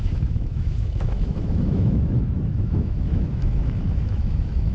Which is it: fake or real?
fake